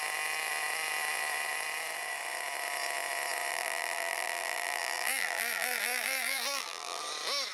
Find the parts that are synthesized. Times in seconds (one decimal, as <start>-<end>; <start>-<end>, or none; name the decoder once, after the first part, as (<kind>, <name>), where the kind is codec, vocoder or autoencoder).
3.5-7.0 (vocoder, BigVGAN v2)